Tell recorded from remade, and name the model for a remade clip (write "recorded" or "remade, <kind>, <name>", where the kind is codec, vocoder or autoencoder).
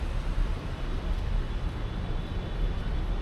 recorded